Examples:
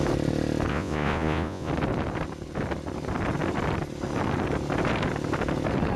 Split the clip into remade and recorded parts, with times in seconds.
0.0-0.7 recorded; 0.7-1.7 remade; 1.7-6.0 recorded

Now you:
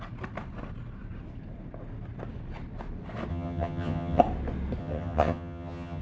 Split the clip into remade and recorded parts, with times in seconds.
0.0-3.3 recorded; 3.3-4.2 remade; 4.2-4.8 recorded; 4.8-6.0 remade

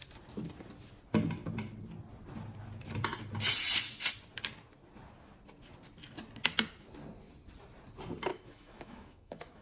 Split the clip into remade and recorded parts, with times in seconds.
0.0-8.3 recorded; 8.3-9.6 remade

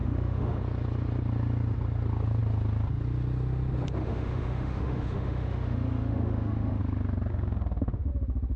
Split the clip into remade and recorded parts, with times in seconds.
0.0-0.6 remade; 0.6-4.0 recorded; 4.0-6.8 remade; 6.8-7.3 recorded; 7.3-8.1 remade; 8.1-8.6 recorded